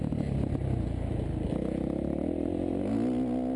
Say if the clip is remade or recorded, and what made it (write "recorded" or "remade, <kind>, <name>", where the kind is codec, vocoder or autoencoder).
recorded